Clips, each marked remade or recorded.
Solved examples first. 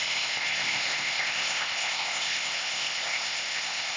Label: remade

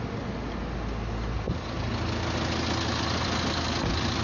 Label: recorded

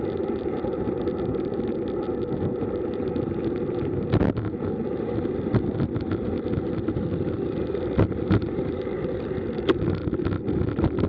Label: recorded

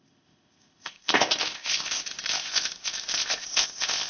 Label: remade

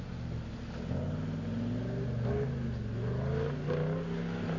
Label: recorded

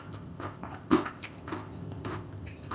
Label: remade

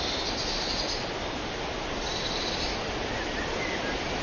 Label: recorded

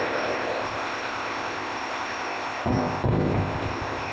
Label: remade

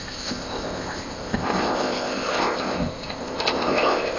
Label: remade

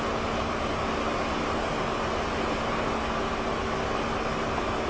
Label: recorded